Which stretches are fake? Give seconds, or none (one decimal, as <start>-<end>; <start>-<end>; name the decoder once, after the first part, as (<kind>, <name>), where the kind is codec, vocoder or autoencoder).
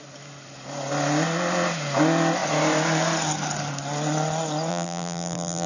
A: 4.7-5.7 (vocoder, BigVGAN v2)